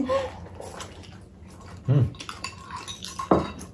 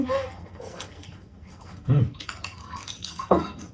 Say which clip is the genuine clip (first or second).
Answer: first